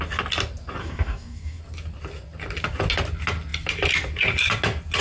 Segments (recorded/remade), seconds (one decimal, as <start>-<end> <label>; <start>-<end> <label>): 0.0-0.8 recorded; 0.8-1.6 remade; 1.6-5.0 recorded